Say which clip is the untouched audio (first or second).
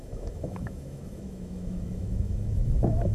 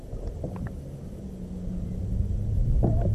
second